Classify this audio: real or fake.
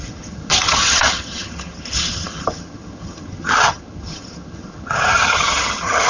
fake